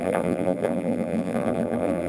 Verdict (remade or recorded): remade